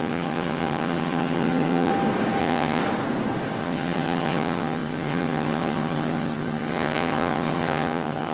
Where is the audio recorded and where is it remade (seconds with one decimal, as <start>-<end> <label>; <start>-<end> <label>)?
0.0-1.9 remade; 1.9-2.4 recorded; 2.4-2.8 remade; 2.8-3.6 recorded; 3.6-8.3 remade